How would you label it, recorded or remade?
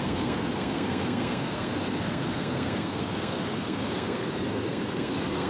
remade